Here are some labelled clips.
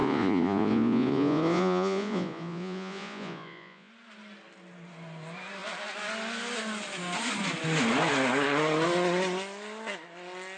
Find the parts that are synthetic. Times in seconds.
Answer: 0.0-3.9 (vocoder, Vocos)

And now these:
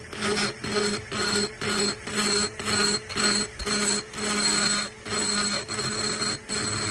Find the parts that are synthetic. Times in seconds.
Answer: none

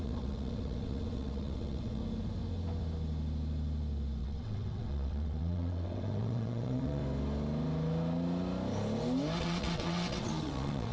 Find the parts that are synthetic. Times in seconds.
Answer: 0.0-2.0 (vocoder, WaveNeXt); 4.2-7.0; 9.4-10.9